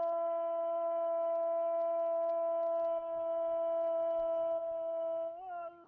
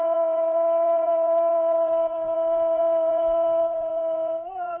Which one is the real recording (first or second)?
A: first